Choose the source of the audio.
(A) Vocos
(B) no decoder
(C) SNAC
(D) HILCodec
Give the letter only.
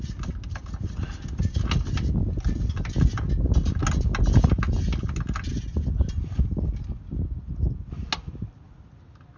B